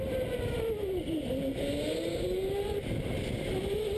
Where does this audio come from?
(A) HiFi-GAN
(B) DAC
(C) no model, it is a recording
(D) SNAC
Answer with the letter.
C